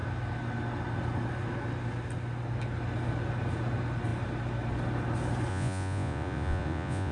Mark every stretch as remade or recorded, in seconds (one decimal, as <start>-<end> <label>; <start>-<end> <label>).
0.0-5.5 recorded; 5.5-7.1 remade